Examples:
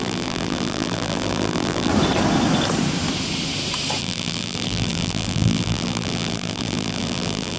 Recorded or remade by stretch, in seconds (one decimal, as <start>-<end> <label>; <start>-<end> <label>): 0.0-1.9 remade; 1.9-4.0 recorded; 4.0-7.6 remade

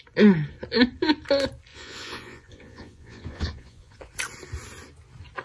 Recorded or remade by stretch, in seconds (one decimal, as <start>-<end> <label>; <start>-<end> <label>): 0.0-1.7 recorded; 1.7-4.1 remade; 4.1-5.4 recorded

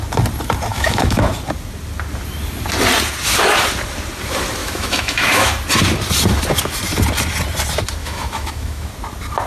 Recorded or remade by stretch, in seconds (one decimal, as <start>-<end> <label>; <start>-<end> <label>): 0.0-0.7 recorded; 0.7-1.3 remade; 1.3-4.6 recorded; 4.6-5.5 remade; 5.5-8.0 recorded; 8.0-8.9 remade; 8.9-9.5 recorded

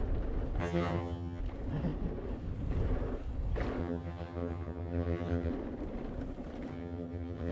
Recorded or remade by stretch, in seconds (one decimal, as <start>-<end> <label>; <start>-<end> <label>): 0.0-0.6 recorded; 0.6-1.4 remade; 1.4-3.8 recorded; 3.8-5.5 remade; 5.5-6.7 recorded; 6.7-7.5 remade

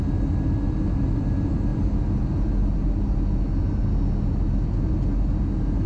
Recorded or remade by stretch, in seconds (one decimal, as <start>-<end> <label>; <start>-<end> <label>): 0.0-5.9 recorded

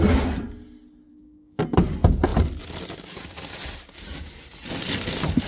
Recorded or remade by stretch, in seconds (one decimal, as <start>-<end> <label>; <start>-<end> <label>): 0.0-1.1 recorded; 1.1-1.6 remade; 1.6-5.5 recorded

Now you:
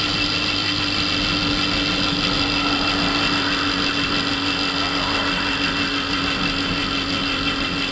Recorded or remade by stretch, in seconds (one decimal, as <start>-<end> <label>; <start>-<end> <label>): 0.0-7.9 recorded

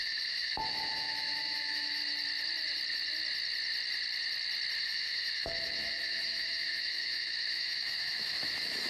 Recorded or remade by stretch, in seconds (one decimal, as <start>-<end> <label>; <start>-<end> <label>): 0.0-2.0 remade; 2.0-4.8 recorded; 4.8-8.9 remade